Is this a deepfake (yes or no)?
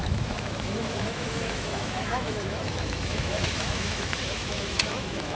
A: yes